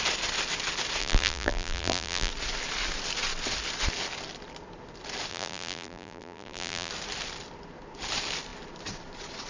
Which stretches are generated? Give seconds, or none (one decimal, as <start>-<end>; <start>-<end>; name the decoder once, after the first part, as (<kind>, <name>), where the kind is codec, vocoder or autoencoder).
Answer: 1.0-2.3 (vocoder, BigVGAN v2); 5.3-6.9